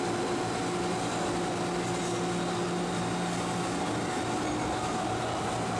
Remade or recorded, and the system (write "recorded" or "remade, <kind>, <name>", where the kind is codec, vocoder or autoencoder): recorded